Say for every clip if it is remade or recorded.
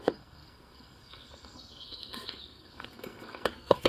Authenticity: remade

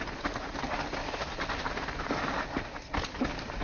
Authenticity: recorded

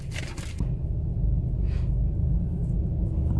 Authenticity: recorded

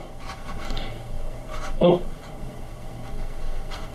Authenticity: remade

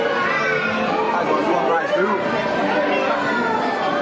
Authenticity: recorded